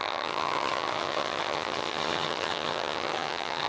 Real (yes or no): no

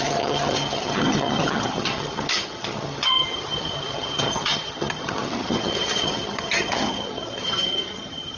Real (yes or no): no